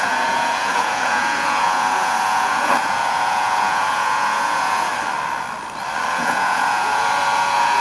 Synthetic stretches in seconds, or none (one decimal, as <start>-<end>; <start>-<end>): 0.0-4.9; 6.1-7.8